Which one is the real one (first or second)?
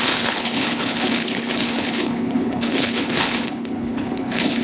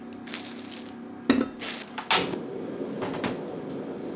second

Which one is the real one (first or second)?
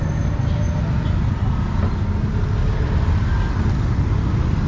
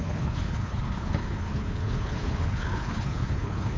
first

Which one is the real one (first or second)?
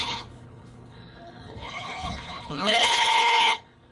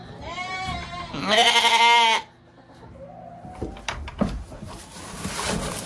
second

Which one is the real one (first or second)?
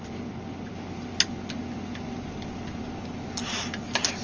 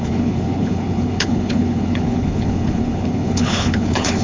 first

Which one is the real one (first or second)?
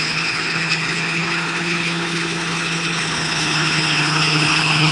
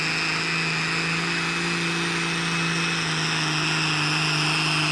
second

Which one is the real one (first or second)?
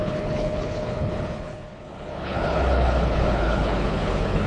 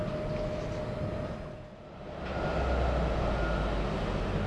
second